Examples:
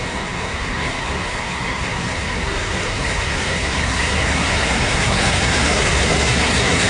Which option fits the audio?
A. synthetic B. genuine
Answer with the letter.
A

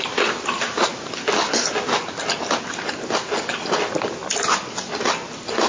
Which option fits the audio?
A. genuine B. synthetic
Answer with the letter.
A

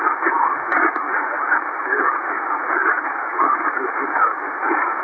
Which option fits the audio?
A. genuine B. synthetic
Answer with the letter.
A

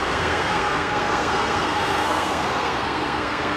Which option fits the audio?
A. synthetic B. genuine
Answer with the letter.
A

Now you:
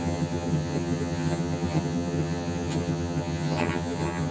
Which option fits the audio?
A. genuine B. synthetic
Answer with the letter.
B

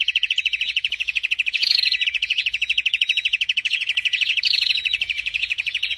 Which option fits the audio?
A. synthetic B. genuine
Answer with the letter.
A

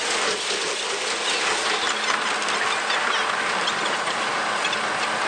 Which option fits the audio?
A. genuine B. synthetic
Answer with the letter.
A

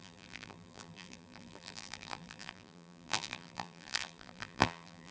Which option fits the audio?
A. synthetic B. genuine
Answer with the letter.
A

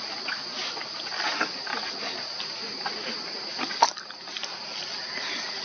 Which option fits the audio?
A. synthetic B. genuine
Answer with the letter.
B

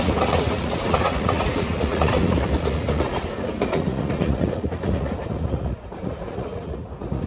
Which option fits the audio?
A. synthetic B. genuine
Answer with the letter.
A